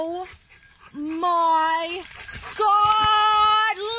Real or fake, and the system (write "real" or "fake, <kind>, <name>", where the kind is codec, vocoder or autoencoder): real